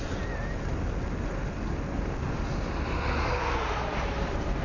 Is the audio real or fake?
real